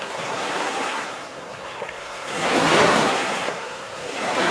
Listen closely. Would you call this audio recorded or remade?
remade